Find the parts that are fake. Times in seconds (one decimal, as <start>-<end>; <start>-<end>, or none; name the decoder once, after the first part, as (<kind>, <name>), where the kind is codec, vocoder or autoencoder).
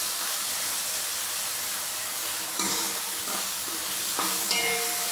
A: 0.0-0.5 (codec, DAC); 2.0-5.1